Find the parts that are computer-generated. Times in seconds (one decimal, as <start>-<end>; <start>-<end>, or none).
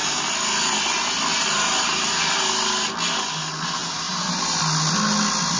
1.3-2.3; 3.8-4.4